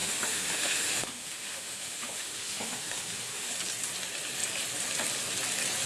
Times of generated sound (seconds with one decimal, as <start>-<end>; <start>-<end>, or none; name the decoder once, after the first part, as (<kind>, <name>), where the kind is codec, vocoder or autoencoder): 0.0-3.5 (autoencoder, DAC-VAE)